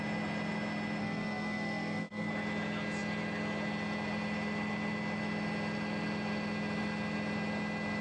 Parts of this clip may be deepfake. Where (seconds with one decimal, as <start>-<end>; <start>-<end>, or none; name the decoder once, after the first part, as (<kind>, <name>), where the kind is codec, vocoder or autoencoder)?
1.0-2.3 (codec, SNAC)